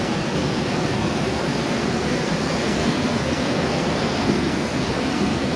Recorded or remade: remade